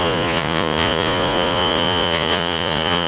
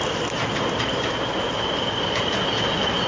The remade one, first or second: first